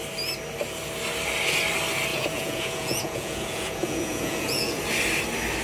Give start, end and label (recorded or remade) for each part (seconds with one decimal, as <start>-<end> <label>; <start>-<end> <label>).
0.0-2.1 recorded; 2.1-4.8 remade; 4.8-5.6 recorded